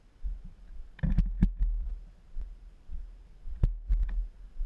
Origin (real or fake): real